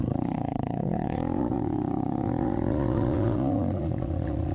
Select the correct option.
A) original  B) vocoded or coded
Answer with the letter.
B